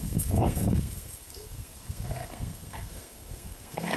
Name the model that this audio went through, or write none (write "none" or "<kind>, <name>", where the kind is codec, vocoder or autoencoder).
codec, SNAC